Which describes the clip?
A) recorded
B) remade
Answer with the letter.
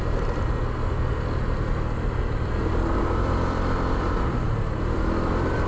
B